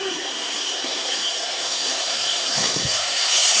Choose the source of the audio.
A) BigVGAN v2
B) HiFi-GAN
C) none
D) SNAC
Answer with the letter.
D